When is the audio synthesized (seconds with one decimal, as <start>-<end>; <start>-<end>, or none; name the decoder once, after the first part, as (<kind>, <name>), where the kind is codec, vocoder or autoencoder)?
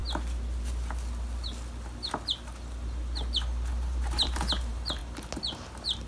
3.7-5.0 (vocoder, BigVGAN v2)